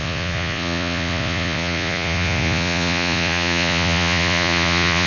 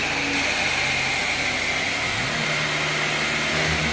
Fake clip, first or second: first